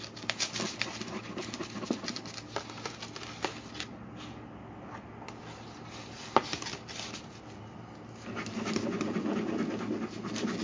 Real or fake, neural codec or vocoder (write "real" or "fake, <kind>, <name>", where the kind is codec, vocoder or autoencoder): real